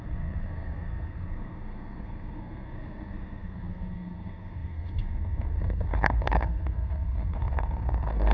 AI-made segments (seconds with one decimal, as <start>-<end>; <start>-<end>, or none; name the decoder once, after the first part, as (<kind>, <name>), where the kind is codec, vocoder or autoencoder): 0.0-8.3 (codec, SNAC)